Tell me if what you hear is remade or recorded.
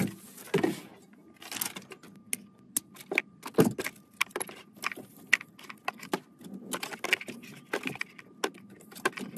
recorded